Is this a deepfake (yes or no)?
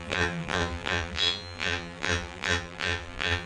yes